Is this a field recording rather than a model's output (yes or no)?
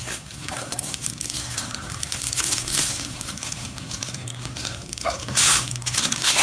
no